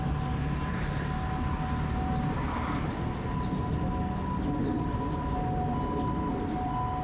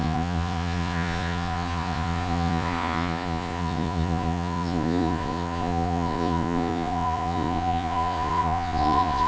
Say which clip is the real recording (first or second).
first